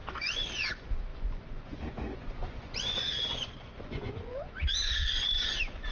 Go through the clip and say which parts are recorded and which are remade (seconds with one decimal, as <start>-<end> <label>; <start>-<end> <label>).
0.0-5.9 remade